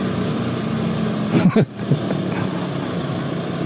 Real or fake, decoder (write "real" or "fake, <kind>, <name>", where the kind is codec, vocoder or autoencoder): real